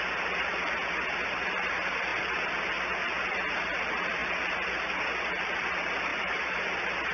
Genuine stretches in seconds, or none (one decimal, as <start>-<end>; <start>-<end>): 0.0-6.1; 6.6-7.1